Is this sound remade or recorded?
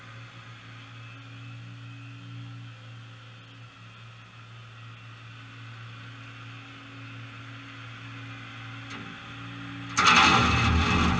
recorded